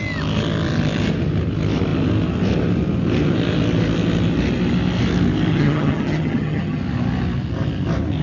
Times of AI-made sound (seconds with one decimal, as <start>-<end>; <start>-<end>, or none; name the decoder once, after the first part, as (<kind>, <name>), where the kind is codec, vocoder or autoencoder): 5.5-6.8 (vocoder, HiFi-GAN)